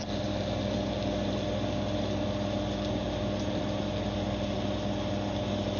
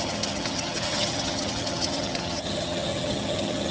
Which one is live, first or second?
first